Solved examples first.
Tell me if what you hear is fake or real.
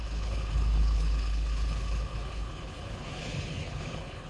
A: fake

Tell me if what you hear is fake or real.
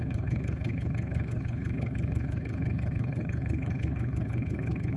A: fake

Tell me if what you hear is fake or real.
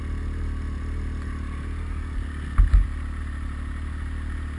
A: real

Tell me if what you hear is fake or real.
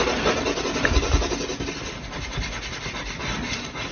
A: real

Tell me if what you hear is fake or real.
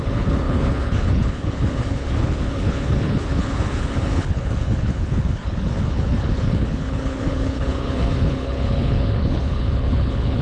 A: fake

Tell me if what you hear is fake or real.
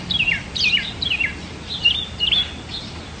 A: real